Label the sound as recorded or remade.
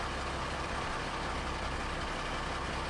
recorded